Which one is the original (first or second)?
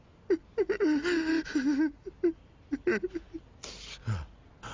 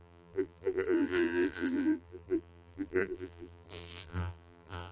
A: first